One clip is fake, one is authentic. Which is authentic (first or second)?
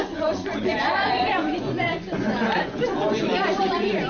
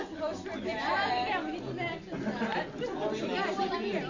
second